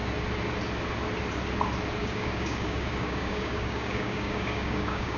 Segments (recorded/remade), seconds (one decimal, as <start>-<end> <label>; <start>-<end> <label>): 0.0-2.0 recorded; 2.0-5.2 remade